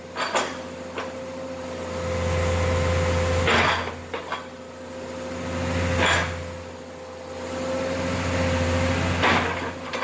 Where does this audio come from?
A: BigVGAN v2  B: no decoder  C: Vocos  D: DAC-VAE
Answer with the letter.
B